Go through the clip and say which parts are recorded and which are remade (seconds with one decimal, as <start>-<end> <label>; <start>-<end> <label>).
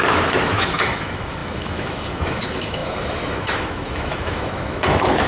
0.0-5.3 remade